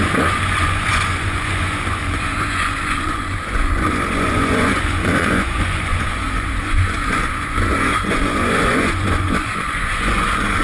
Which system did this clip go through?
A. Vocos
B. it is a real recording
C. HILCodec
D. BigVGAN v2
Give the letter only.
A